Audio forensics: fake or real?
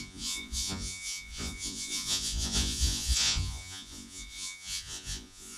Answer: fake